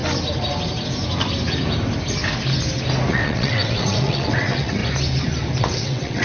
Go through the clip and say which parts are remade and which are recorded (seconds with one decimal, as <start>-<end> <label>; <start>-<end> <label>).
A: 0.0-3.1 recorded; 3.1-4.8 remade; 4.8-5.6 recorded; 5.6-6.2 remade